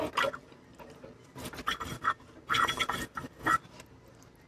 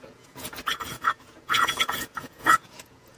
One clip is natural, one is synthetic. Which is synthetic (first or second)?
second